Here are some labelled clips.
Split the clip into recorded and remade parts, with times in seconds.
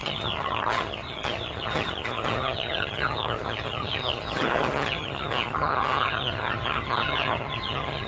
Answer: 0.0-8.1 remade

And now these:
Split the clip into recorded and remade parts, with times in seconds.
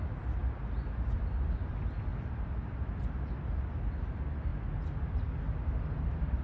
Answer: 0.0-0.4 recorded; 0.4-1.7 remade; 1.7-2.1 recorded; 2.1-3.6 remade; 3.6-6.4 recorded